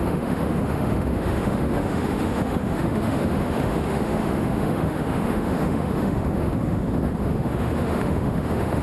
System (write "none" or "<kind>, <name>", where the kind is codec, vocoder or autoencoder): autoencoder, DAC-VAE